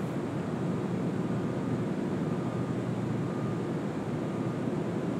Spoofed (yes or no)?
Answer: no